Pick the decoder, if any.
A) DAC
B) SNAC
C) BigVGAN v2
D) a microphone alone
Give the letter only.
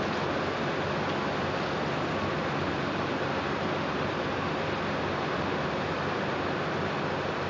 D